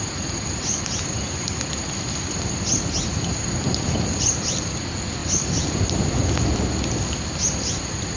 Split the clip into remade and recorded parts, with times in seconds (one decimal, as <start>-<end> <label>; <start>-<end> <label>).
0.0-8.2 recorded